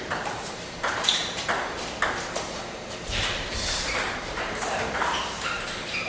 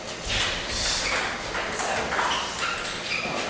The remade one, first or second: first